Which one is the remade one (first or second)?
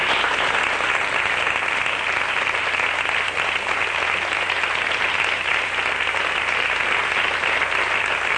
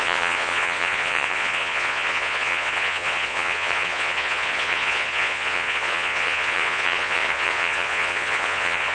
second